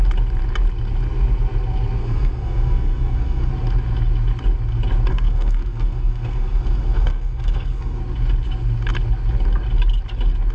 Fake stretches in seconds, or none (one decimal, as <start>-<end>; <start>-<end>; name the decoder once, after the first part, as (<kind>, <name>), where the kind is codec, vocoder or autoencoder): 2.0-3.5 (codec, SNAC); 5.1-8.0